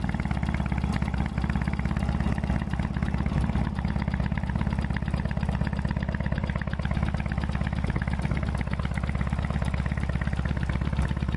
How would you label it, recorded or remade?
recorded